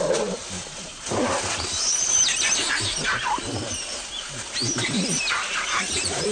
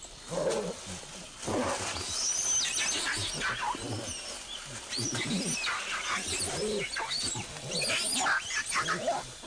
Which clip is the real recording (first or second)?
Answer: second